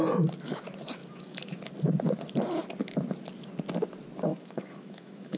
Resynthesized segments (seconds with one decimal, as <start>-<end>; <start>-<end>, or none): 1.0-1.6; 4.3-5.4